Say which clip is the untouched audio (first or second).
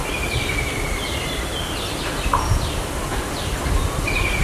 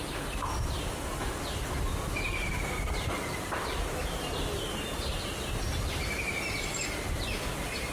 second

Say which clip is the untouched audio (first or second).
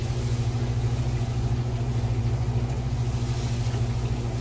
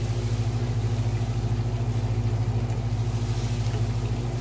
second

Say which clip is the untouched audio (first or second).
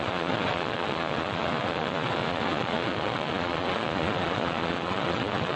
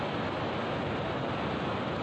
second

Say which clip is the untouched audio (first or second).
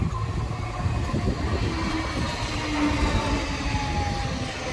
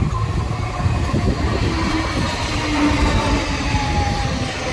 first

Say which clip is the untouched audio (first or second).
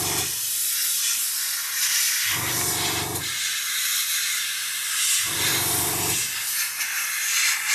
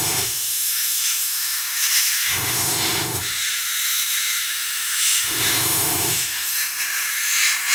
first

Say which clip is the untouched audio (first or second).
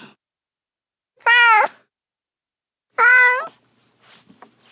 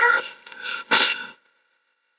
first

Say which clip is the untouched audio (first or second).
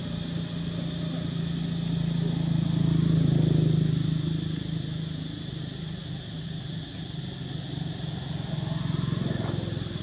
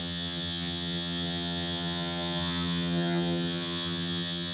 first